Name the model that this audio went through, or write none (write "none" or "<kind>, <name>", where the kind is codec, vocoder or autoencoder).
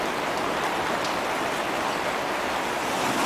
none